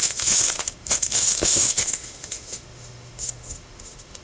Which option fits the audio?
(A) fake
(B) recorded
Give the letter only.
A